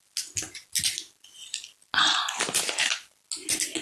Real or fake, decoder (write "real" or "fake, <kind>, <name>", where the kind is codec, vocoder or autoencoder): real